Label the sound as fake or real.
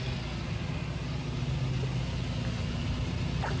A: real